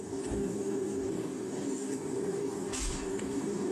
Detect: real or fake fake